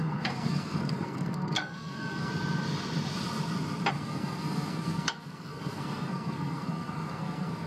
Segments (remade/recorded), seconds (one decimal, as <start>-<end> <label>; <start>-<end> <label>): 0.0-2.3 remade; 2.3-3.9 recorded; 3.9-7.7 remade